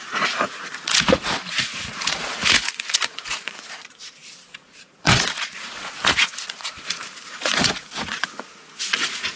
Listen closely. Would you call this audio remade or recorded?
remade